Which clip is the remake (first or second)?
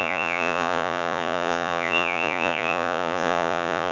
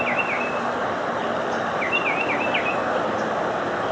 first